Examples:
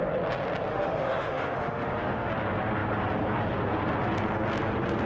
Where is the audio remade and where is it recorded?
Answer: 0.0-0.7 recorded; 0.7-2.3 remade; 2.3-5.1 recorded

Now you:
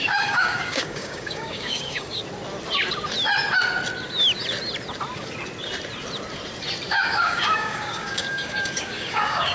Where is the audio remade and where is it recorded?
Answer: 0.0-2.2 remade; 2.2-6.9 recorded; 6.9-9.5 remade

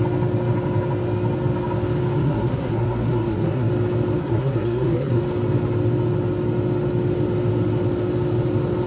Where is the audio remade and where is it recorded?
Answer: 0.0-2.2 recorded; 2.2-3.7 remade; 3.7-4.2 recorded; 4.2-5.2 remade; 5.2-8.9 recorded

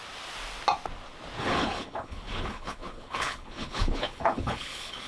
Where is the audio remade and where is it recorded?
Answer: 0.0-1.4 recorded; 1.4-5.1 remade